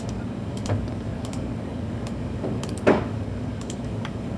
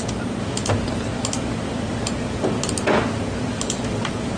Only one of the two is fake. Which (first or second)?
first